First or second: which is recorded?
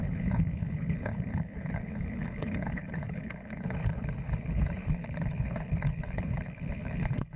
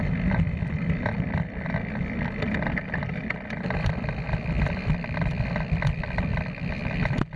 second